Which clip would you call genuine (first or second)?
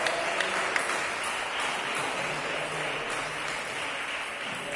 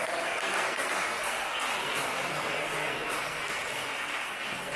first